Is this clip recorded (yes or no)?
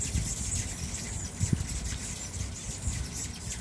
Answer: yes